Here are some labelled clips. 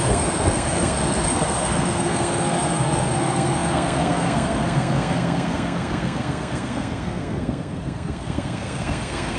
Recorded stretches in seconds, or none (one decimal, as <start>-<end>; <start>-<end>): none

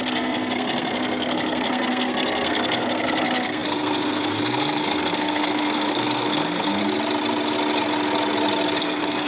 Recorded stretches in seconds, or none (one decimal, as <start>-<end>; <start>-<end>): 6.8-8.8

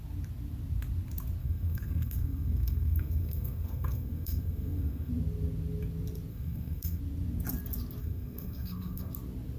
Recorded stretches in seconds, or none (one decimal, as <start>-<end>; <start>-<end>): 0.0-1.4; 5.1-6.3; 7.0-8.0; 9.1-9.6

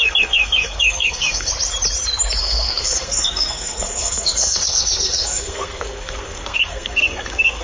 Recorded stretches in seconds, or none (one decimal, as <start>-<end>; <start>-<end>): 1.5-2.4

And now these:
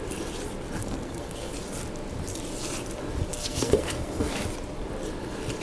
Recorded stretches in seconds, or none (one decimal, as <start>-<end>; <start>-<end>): 0.0-0.8; 1.5-3.3; 4.3-5.6

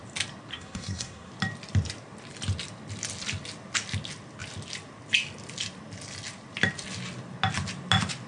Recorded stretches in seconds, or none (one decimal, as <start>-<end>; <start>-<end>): 0.0-0.5; 1.3-8.3